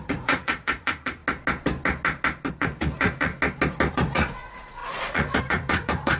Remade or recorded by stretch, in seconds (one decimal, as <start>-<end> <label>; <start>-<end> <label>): 0.0-1.2 remade; 1.2-2.5 recorded; 2.5-3.3 remade; 3.3-3.9 recorded; 3.9-6.2 remade